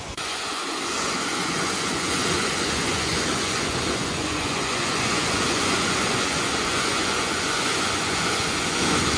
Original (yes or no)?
no